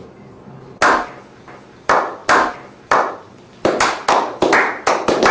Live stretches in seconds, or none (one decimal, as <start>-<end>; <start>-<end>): 0.0-5.3